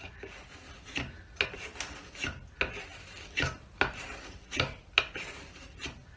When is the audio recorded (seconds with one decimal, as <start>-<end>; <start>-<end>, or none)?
0.0-6.2